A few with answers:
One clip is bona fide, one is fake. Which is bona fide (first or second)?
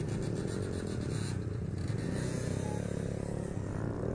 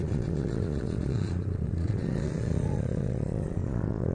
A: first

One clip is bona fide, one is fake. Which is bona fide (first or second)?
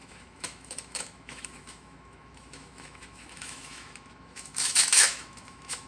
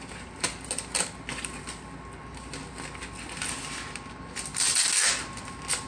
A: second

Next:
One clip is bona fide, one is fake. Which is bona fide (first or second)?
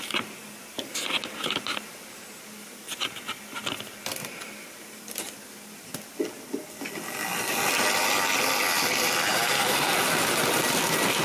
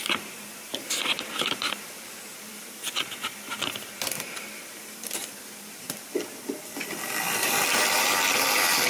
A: first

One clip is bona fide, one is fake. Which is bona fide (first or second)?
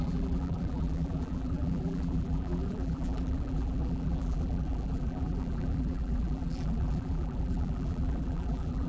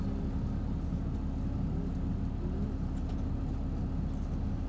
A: second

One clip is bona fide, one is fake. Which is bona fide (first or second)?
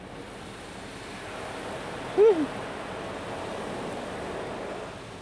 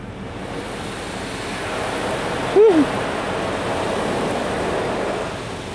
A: second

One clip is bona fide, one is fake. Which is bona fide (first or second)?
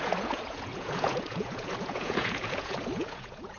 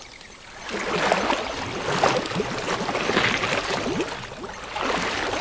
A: second